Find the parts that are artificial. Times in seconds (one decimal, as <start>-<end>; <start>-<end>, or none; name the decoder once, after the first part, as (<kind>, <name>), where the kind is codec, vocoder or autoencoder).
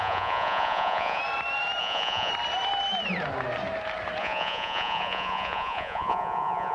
0.0-1.2 (vocoder, Vocos); 1.8-2.3; 4.2-6.7